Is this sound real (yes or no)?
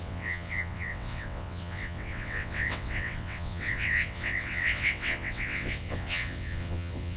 no